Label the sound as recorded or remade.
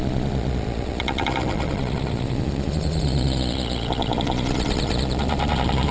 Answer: remade